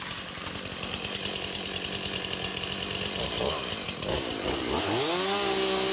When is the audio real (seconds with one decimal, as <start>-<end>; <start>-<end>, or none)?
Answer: 0.0-5.9